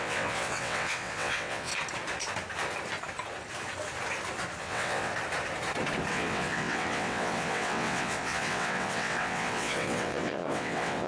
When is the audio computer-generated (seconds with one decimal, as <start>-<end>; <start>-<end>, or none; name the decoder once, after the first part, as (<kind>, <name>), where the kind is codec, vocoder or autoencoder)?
0.0-1.7 (vocoder, WaveNeXt); 4.6-5.1; 6.1-11.1